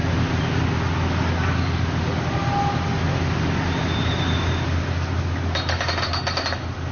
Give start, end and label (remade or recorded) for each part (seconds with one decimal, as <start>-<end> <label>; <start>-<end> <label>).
0.0-6.9 recorded